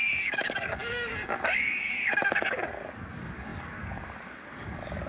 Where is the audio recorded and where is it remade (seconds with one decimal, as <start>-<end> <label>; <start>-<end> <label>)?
0.0-5.1 remade